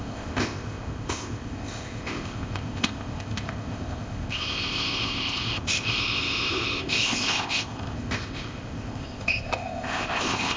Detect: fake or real fake